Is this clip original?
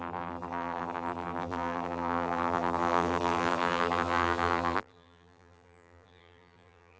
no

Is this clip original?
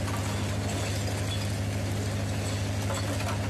yes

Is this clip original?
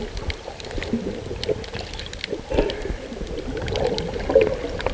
yes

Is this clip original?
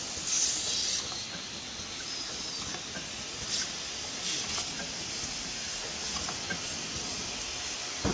yes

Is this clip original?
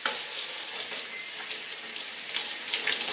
yes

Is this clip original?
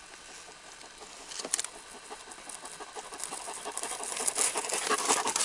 yes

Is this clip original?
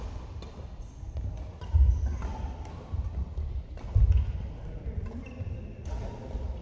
yes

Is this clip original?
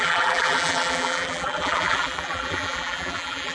no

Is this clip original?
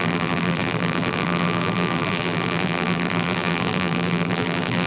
no